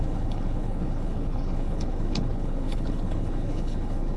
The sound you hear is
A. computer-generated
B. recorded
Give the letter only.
A